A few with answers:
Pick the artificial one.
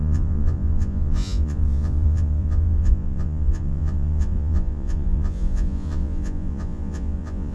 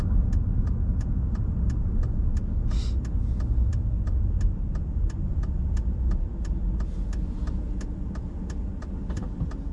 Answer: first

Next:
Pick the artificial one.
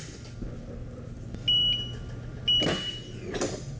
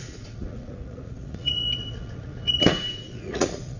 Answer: second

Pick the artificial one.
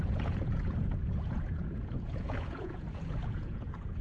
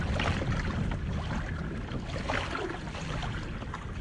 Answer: first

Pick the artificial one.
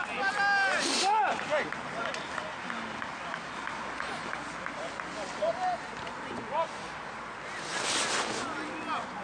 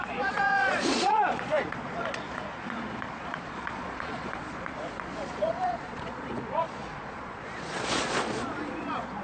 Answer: second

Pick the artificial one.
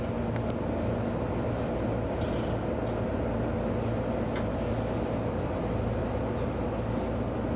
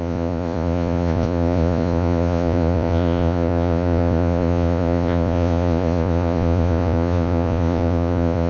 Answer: second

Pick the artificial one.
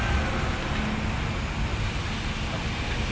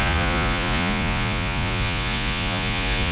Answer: second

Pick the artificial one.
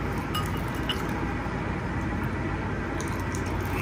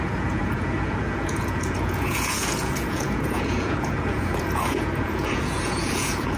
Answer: second